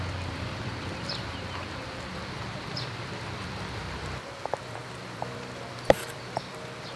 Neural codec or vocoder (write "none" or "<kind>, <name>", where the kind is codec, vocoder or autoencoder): vocoder, BigVGAN v2